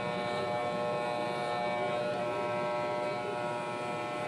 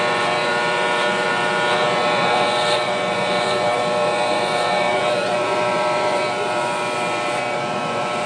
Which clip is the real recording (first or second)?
first